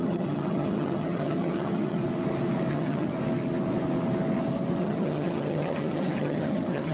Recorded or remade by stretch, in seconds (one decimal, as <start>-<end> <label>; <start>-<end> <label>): 0.0-2.0 remade; 2.0-2.7 recorded; 2.7-3.1 remade; 3.1-4.8 recorded; 4.8-6.9 remade